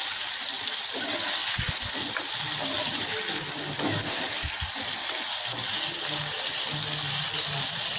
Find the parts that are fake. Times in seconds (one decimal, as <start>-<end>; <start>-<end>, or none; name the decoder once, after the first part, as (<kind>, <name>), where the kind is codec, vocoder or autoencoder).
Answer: none